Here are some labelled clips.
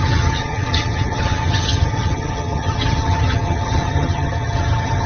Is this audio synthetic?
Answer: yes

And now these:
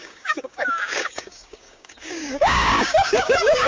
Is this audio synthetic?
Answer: yes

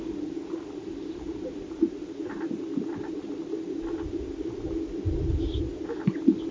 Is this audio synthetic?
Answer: no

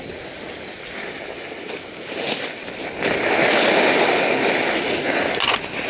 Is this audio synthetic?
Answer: no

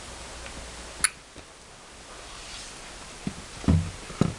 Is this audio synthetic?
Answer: no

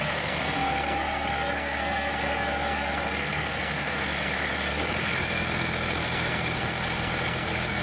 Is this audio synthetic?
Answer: yes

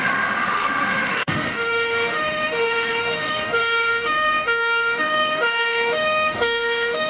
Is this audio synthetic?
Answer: yes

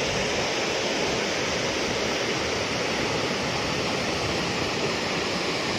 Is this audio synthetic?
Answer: no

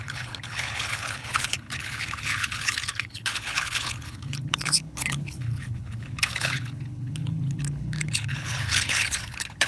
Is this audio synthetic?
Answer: yes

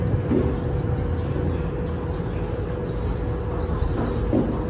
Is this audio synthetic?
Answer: no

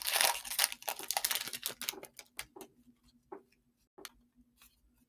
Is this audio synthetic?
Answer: no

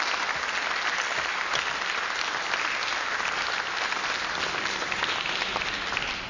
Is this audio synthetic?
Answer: no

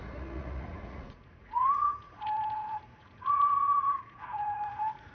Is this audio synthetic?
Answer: yes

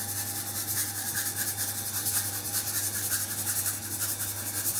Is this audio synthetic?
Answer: no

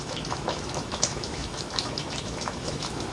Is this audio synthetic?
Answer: yes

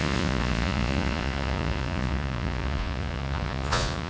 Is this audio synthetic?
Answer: yes